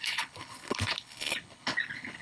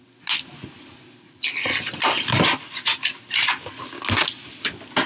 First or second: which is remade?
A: first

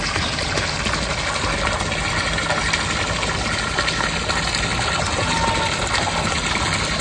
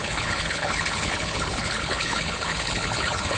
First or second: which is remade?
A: second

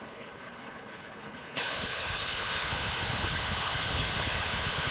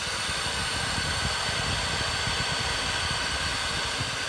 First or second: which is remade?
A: first